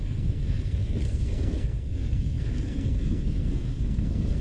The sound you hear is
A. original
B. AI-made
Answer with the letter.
B